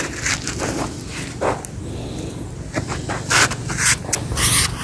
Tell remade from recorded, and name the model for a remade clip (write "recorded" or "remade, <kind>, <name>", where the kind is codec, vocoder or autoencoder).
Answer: recorded